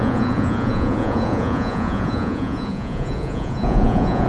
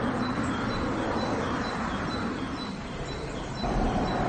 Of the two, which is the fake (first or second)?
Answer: first